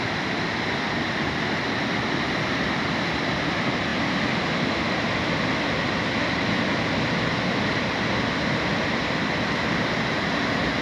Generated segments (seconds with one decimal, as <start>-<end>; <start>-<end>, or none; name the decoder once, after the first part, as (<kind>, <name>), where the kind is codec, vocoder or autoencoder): none